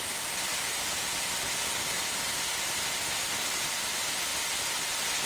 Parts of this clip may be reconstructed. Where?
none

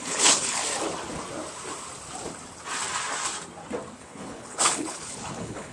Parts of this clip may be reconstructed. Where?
0.0-0.6; 4.0-5.7

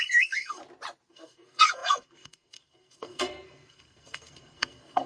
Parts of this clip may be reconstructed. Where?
0.0-0.6; 1.1-5.1

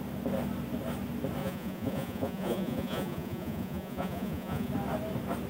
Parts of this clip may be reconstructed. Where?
1.4-4.7

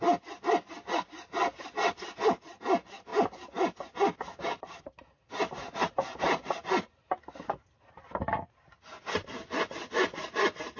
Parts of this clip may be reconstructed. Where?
none